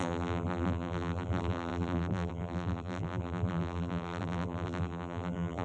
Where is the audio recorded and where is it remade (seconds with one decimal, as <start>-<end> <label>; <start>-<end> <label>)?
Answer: 0.0-5.6 remade